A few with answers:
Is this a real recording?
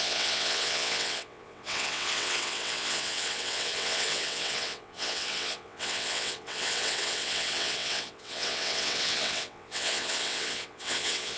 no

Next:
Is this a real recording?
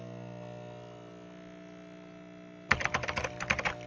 yes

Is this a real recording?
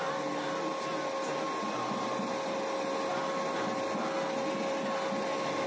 yes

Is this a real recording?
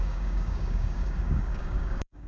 no